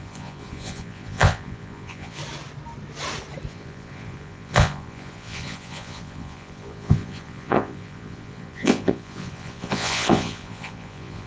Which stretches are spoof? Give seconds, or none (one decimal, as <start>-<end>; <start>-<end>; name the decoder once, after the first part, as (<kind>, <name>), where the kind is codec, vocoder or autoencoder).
0.0-2.2 (vocoder, Vocos); 3.5-11.3

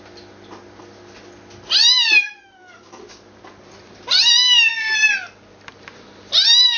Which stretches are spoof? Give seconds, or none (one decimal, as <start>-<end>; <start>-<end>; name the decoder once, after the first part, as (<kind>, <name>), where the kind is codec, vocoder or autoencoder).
2.2-3.0 (codec, DAC)

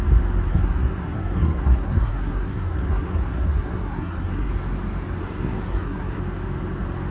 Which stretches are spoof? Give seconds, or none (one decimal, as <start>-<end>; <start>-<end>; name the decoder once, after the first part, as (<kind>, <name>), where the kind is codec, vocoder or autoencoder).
0.5-4.5 (codec, SNAC); 5.2-6.2

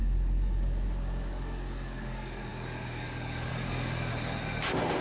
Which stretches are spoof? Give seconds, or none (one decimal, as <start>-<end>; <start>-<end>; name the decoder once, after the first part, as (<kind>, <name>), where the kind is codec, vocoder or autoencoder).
0.0-4.1 (codec, DAC)